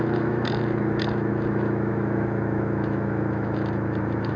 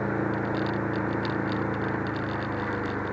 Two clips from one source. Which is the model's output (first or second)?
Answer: first